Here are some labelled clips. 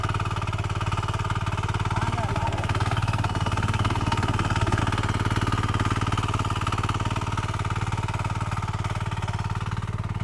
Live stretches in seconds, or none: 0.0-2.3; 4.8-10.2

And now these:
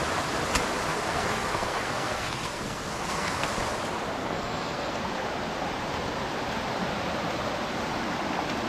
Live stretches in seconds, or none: 0.0-0.9; 3.5-4.2; 5.0-8.7

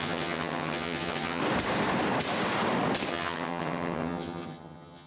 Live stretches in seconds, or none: 1.4-3.1

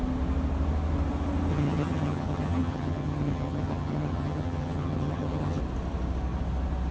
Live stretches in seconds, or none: 0.0-1.5; 5.6-6.9

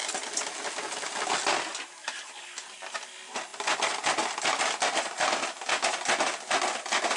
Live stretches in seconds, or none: 0.0-7.2